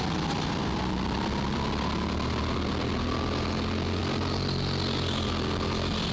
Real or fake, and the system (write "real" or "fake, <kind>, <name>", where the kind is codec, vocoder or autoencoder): real